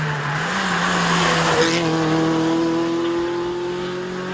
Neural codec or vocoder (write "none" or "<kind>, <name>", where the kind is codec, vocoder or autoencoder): none